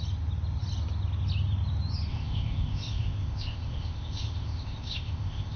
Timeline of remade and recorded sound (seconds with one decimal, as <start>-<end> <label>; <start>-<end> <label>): 0.0-2.1 recorded; 2.1-5.6 remade